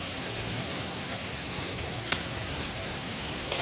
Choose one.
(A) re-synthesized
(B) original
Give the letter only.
A